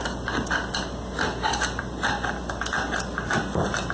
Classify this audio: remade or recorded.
recorded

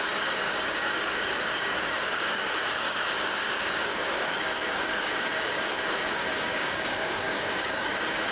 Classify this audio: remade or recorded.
remade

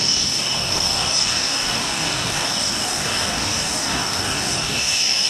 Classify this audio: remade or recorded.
remade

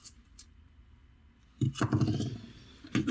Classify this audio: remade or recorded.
recorded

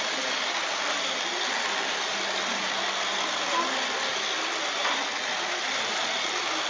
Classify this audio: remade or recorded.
recorded